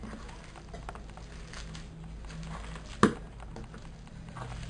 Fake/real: real